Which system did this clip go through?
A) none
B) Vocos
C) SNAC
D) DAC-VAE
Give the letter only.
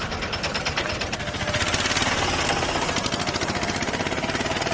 A